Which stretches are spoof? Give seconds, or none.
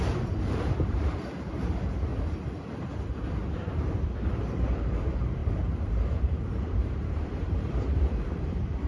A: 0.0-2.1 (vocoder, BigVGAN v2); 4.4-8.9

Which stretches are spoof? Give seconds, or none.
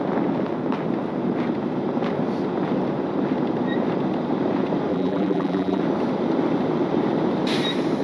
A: 4.9-5.8 (vocoder, BigVGAN v2)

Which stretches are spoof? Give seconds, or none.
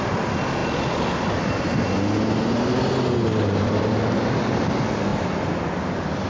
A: 3.3-3.9 (vocoder, BigVGAN v2); 5.1-5.6